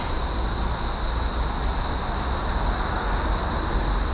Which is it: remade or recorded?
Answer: recorded